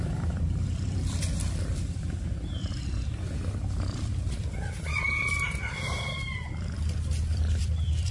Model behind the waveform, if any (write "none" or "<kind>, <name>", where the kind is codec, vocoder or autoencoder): vocoder, BigVGAN v2